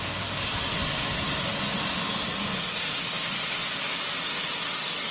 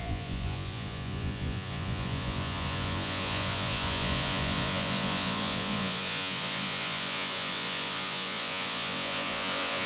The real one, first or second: first